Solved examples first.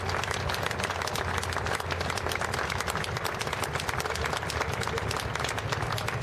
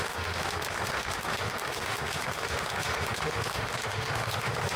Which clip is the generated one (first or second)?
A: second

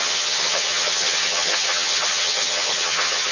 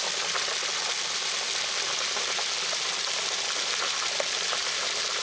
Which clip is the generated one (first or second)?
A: first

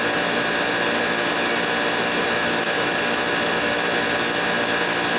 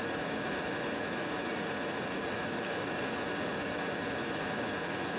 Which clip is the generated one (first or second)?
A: second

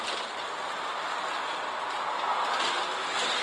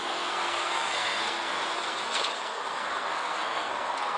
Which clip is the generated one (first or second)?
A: second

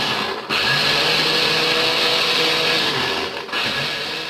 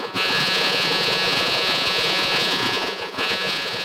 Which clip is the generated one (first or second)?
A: second